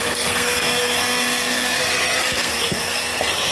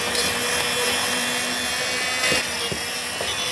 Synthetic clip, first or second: first